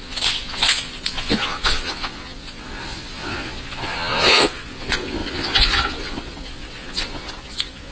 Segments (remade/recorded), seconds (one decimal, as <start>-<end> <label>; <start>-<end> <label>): 0.0-7.9 remade